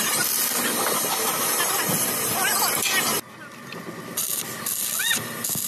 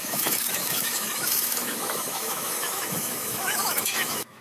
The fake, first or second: second